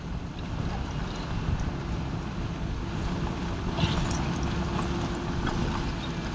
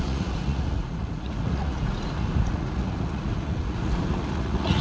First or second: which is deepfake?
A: second